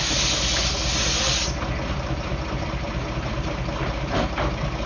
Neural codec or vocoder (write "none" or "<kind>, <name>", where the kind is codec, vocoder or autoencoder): none